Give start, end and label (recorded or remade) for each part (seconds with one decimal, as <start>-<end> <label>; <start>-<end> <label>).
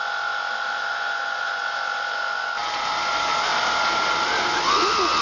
0.0-0.8 recorded; 0.8-1.6 remade; 1.6-5.2 recorded